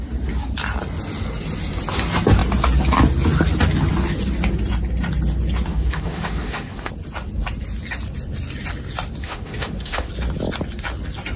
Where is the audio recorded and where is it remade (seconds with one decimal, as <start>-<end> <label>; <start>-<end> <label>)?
0.0-5.7 recorded; 5.7-6.9 remade; 6.9-9.2 recorded; 9.2-10.1 remade; 10.1-11.4 recorded